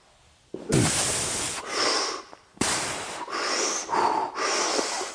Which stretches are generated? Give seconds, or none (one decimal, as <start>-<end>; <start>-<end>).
2.5-3.6